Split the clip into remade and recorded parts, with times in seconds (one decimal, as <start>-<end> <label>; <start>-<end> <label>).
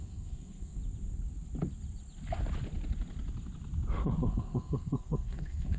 0.0-0.8 remade; 0.8-4.3 recorded; 4.3-5.8 remade